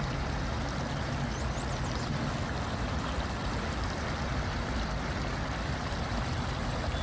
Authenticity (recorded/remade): recorded